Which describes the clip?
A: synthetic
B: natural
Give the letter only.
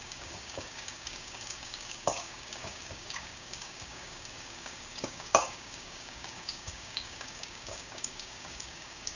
A